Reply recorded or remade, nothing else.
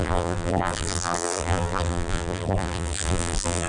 remade